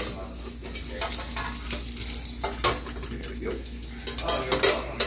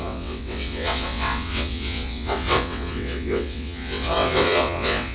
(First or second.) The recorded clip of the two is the first